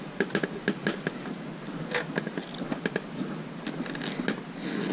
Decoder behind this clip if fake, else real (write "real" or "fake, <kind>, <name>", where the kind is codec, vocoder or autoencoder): real